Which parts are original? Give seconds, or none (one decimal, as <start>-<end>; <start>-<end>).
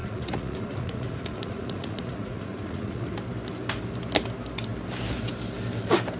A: 3.1-6.2